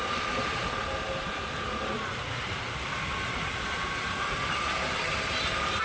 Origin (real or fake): real